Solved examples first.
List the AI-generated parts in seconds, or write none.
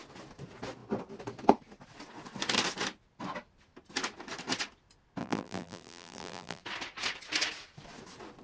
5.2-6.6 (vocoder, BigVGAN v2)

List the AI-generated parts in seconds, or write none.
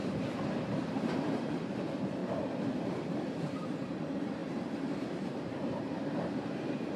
0.0-7.0 (vocoder, BigVGAN v2)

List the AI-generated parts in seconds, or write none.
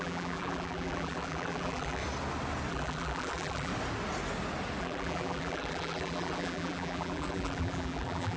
0.0-2.0 (vocoder, BigVGAN v2); 2.7-3.7; 4.8-8.4